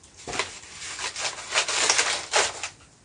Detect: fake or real real